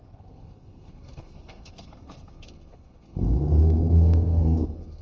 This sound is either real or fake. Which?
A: fake